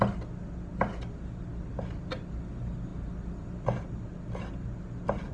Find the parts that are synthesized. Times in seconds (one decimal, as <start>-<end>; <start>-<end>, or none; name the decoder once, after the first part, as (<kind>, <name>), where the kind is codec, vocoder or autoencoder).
none